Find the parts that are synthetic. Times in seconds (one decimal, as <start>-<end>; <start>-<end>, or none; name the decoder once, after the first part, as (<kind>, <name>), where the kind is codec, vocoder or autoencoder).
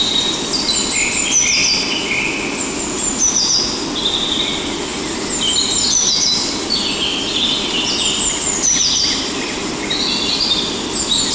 none